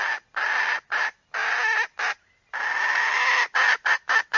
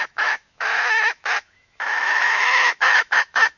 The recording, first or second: first